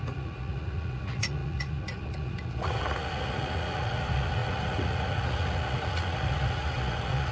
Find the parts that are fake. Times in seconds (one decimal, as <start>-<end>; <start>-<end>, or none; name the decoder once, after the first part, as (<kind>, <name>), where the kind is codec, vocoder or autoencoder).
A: 0.0-7.3 (vocoder, Vocos)